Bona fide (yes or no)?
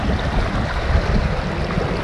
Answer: yes